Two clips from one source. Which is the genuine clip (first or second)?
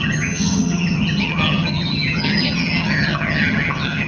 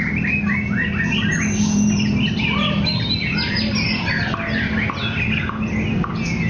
second